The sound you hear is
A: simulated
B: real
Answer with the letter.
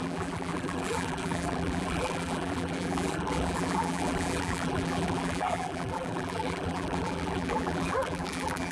A